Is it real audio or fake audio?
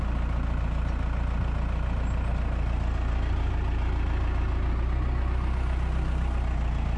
real